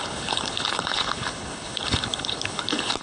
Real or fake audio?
fake